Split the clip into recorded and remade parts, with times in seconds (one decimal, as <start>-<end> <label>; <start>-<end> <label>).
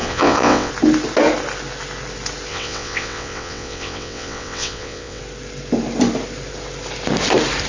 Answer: 0.0-0.7 remade; 0.7-2.5 recorded; 2.5-5.2 remade; 5.2-7.7 recorded